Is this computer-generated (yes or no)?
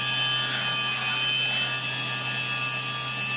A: no